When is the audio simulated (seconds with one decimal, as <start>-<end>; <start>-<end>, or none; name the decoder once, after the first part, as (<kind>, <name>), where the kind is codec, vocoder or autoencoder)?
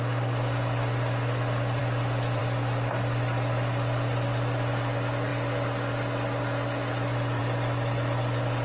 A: none